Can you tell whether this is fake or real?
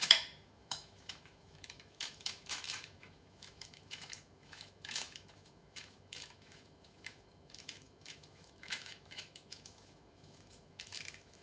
fake